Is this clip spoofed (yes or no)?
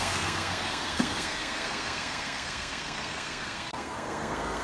yes